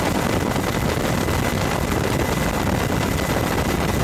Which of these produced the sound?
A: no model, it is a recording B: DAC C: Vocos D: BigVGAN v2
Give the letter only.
A